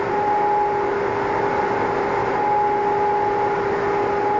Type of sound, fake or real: real